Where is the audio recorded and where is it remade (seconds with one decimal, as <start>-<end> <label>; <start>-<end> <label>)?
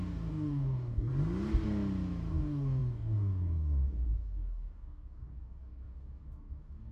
0.0-1.1 remade; 1.1-2.3 recorded; 2.3-6.9 remade